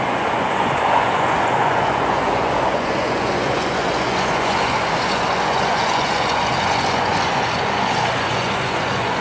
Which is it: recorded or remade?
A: remade